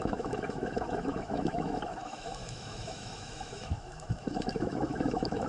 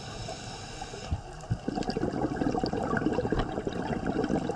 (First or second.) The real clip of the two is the second